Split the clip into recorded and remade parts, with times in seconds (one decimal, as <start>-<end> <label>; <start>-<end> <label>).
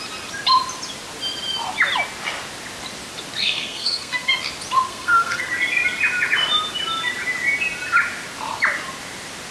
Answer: 0.0-3.4 recorded; 3.4-4.3 remade; 4.3-4.9 recorded; 4.9-5.5 remade; 5.5-9.5 recorded